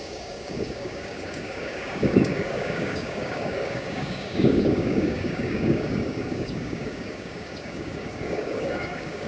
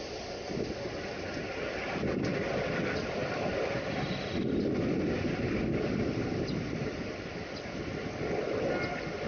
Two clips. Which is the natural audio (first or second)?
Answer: second